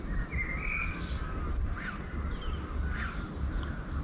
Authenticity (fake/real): real